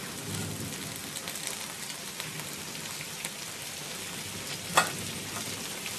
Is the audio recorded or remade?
recorded